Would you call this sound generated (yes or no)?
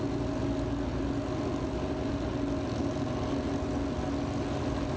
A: no